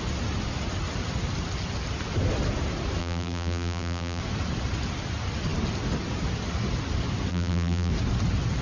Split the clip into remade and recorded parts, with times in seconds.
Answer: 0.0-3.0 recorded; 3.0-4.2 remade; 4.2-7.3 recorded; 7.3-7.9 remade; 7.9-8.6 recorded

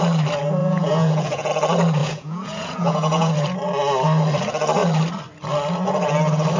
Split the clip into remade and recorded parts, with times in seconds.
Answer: 0.0-0.6 recorded; 0.6-1.5 remade; 1.5-2.0 recorded; 2.0-3.3 remade; 3.3-6.6 recorded

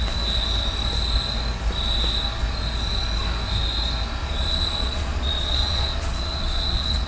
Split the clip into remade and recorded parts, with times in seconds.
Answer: 0.0-4.2 recorded; 4.2-7.1 remade

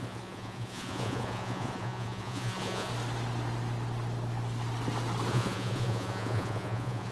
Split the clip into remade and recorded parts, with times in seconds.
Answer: 0.0-2.9 remade; 2.9-5.3 recorded; 5.3-7.1 remade